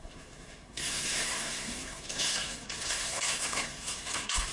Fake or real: fake